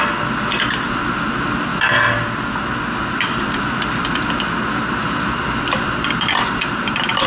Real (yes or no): yes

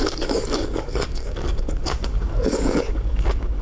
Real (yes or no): no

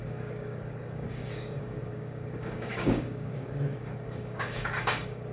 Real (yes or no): no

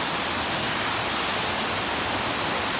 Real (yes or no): yes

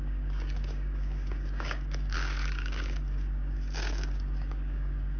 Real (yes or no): no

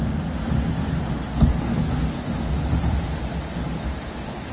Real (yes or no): yes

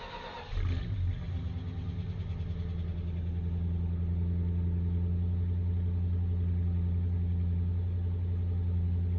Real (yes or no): yes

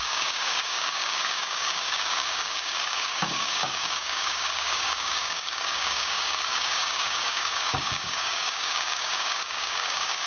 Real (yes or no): no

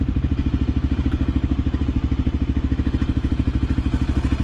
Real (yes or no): yes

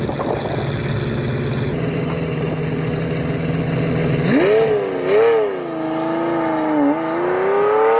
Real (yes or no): yes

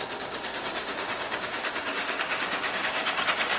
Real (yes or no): no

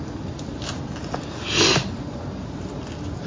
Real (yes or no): yes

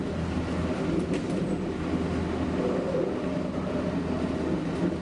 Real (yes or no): yes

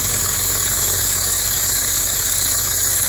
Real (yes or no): no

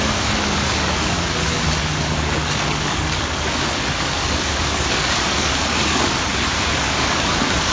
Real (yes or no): no